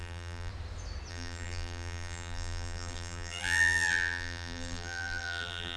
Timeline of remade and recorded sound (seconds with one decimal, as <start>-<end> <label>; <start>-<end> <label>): 0.0-0.5 remade; 0.5-1.1 recorded; 1.1-5.8 remade